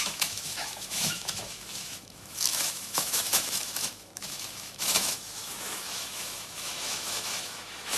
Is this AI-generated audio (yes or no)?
yes